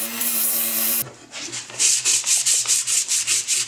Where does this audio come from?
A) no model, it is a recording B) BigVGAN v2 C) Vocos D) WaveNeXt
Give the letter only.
B